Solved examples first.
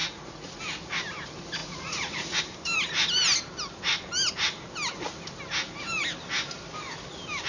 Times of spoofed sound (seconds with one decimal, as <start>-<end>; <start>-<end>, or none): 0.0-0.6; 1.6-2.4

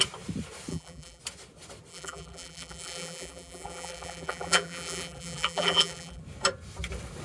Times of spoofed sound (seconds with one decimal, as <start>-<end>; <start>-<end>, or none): 0.7-1.2; 1.9-6.2

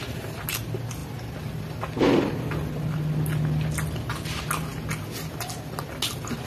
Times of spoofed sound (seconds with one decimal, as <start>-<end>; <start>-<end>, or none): none

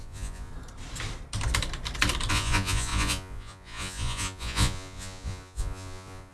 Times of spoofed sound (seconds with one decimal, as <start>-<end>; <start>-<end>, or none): 0.0-0.5; 2.3-6.3

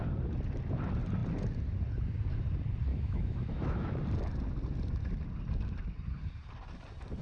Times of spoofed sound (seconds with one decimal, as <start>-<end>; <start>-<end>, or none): 2.9-4.0

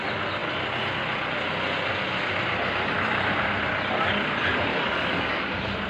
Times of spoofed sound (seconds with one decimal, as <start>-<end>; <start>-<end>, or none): 4.7-5.4